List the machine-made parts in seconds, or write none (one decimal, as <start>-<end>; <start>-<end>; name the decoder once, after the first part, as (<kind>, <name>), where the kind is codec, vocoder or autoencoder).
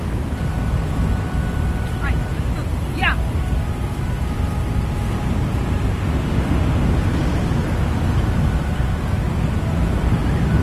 5.9-6.9 (autoencoder, DAC-VAE)